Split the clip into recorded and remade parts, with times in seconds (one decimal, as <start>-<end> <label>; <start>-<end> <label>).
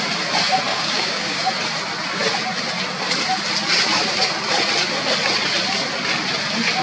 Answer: 0.0-0.7 recorded; 0.7-1.5 remade; 1.5-6.8 recorded